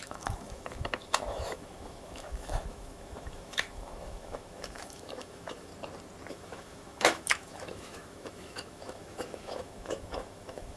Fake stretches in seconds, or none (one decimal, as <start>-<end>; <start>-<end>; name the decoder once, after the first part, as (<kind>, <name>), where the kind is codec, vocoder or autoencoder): 0.0-5.7 (autoencoder, DAC-VAE); 6.3-10.8